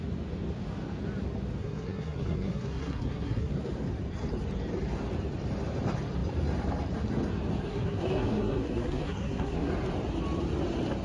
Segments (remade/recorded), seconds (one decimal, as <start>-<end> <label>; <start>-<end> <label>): 0.0-1.6 recorded; 1.6-3.5 remade; 3.5-7.7 recorded; 7.7-9.7 remade; 9.7-11.0 recorded